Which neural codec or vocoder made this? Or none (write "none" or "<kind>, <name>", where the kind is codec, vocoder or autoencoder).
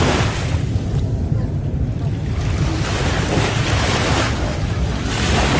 none